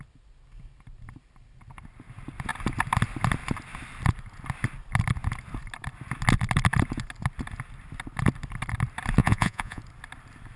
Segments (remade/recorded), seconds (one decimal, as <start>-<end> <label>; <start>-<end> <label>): 0.0-9.2 recorded; 9.2-9.8 remade; 9.8-10.6 recorded